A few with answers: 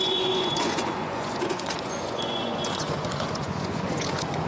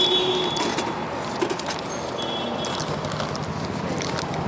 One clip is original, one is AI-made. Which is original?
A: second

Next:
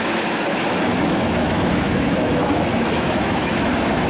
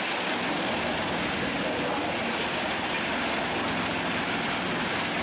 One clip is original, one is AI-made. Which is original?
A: second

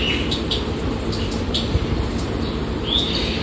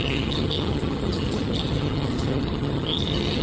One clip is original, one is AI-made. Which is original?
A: first